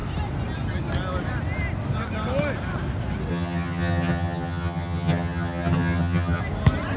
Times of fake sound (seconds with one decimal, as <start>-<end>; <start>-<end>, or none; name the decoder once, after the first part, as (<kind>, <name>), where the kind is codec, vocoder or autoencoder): 3.3-6.4 (vocoder, HiFi-GAN)